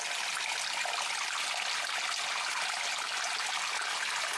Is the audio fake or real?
real